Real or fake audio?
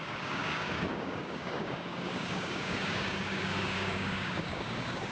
fake